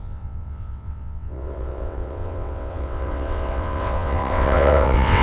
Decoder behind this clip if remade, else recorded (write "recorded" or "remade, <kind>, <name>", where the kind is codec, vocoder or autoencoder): remade, vocoder, WaveNeXt